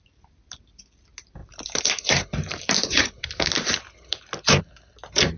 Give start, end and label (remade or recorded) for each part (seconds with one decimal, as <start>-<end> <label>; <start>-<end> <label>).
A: 0.0-1.4 recorded; 1.4-4.6 remade; 4.6-5.4 recorded